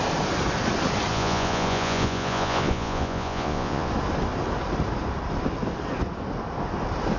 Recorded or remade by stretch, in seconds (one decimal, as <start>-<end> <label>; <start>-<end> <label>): 0.0-1.1 recorded; 1.1-3.9 remade; 3.9-7.2 recorded